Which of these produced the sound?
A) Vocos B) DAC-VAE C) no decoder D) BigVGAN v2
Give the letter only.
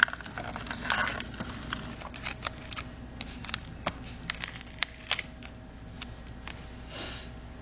C